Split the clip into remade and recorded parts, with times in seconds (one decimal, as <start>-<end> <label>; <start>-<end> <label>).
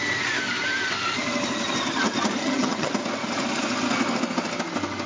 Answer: 0.0-2.4 recorded; 2.4-2.9 remade; 2.9-5.1 recorded